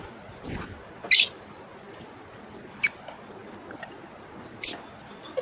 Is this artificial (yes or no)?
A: no